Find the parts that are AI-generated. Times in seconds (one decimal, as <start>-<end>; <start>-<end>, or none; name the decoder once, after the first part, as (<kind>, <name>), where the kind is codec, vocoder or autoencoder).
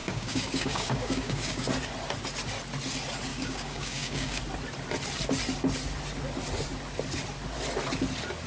0.0-1.7 (codec, DAC); 3.3-4.4